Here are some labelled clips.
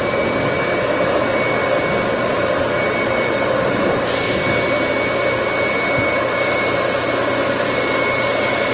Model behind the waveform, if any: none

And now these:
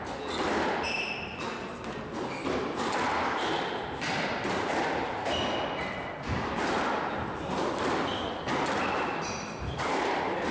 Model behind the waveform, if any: none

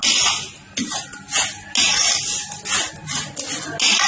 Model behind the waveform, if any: none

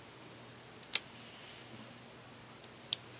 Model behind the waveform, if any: none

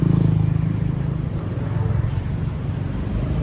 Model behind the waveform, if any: none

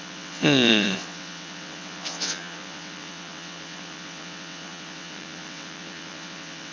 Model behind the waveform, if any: vocoder, WaveNeXt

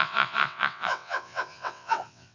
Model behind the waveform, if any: vocoder, WaveNeXt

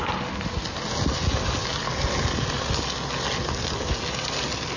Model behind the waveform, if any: none